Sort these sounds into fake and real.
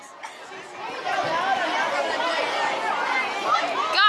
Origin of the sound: real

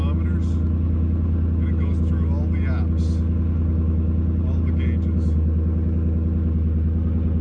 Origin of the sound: real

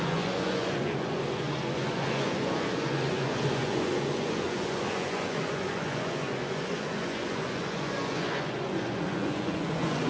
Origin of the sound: fake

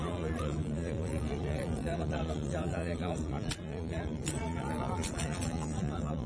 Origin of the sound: fake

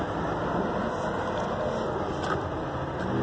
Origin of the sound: real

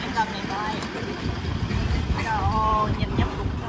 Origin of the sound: real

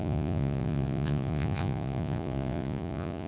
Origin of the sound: fake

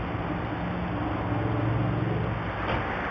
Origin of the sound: real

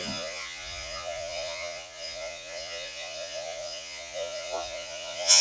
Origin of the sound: fake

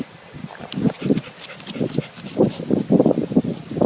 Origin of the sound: real